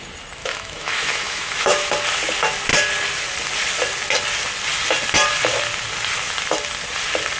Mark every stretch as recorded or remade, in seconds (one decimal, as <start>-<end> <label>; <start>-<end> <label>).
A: 0.0-0.4 recorded; 0.4-1.9 remade; 1.9-7.4 recorded